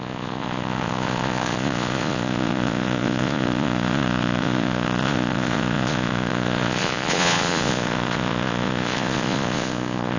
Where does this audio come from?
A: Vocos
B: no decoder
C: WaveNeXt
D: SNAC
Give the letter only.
A